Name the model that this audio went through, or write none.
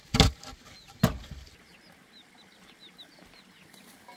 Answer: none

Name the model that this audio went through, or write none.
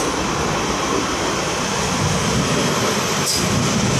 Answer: vocoder, BigVGAN v2